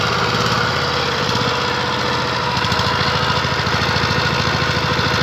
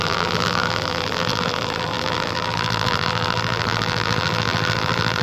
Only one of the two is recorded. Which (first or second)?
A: first